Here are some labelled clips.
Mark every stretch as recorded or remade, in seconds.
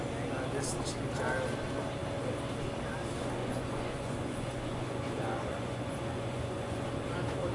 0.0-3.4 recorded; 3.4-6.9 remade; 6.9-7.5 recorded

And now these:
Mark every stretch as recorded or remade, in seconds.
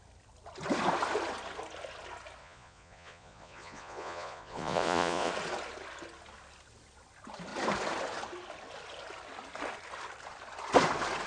0.0-2.4 recorded; 2.4-5.3 remade; 5.3-11.3 recorded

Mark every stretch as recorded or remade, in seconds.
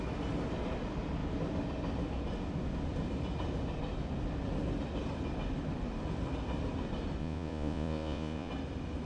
0.0-7.2 recorded; 7.2-8.5 remade; 8.5-9.1 recorded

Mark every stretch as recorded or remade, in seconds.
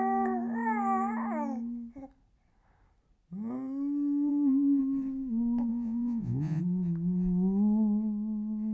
0.0-4.3 recorded; 4.3-4.8 remade; 4.8-5.7 recorded; 5.7-6.6 remade; 6.6-8.7 recorded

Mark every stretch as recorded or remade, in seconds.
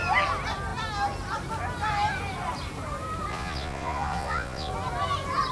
0.0-3.3 recorded; 3.3-4.7 remade; 4.7-5.5 recorded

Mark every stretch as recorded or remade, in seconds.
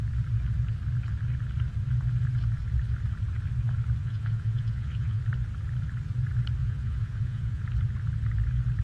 0.0-4.0 recorded; 4.0-5.2 remade; 5.2-6.6 recorded; 6.6-7.6 remade; 7.6-8.8 recorded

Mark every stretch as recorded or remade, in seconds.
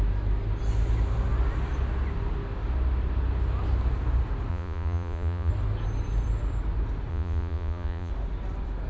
0.0-4.5 recorded; 4.5-5.5 remade; 5.5-7.1 recorded; 7.1-8.1 remade; 8.1-8.9 recorded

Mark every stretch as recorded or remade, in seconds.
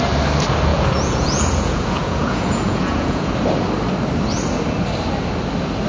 0.0-0.7 recorded; 0.7-3.3 remade; 3.3-5.9 recorded